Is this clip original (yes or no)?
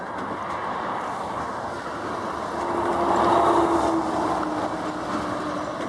yes